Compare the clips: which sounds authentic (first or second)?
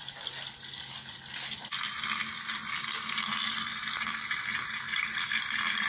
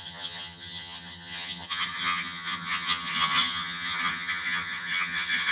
first